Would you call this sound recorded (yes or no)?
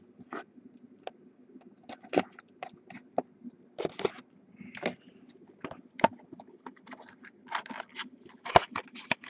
yes